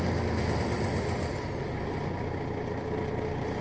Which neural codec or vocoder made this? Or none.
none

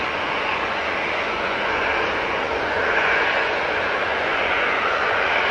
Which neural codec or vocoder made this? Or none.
vocoder, Vocos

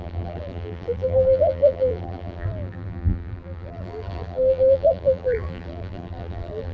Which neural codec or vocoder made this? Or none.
vocoder, BigVGAN v2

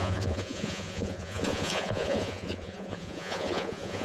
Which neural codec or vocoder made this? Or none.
vocoder, Vocos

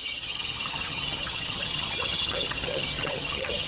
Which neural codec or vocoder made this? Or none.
vocoder, HiFi-GAN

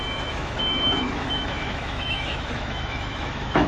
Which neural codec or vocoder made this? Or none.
autoencoder, DAC-VAE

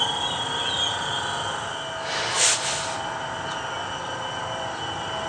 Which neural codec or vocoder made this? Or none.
none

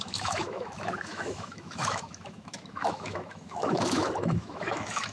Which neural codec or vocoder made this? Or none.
autoencoder, DAC-VAE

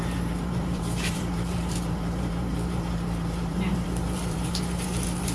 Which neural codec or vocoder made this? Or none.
vocoder, BigVGAN v2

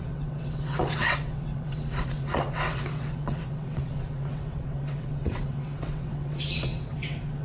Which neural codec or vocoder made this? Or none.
vocoder, WaveNeXt